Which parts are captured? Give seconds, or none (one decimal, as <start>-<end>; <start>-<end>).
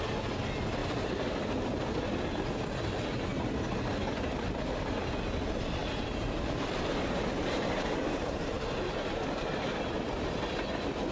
0.0-3.3; 3.9-5.8; 9.6-11.1